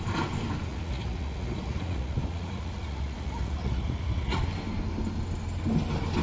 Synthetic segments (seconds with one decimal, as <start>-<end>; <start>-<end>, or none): 0.7-4.4